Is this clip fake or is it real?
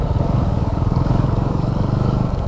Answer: fake